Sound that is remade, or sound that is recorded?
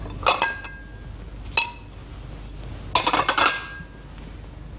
recorded